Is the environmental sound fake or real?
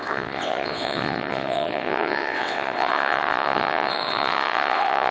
fake